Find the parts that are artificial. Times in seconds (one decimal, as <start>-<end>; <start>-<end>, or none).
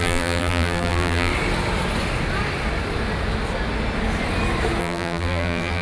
0.0-1.3; 4.8-5.8